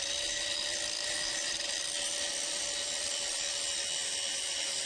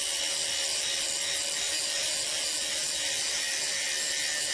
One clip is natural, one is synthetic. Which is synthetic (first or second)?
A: first